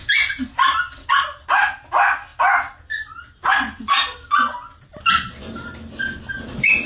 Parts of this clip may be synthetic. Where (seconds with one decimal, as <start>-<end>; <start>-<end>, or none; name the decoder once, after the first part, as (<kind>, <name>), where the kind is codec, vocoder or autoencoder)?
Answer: none